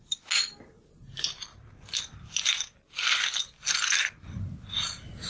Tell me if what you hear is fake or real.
real